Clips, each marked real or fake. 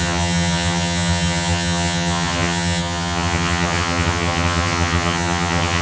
fake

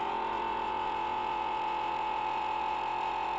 fake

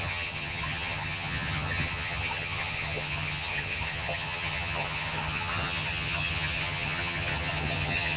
fake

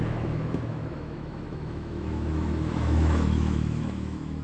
fake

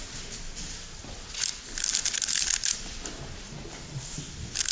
real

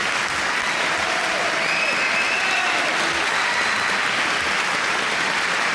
real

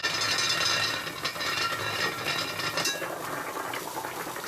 real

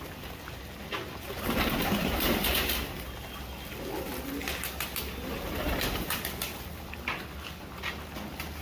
real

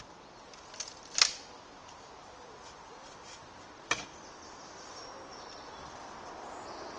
real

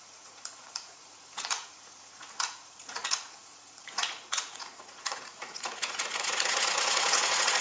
fake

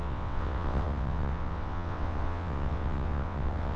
fake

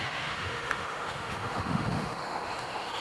fake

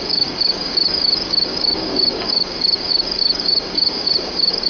fake